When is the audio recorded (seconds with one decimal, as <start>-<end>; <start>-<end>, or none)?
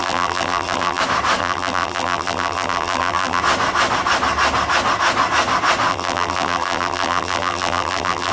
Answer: 1.0-1.4; 3.4-5.9